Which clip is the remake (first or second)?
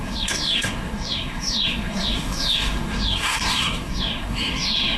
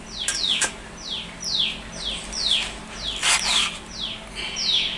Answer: first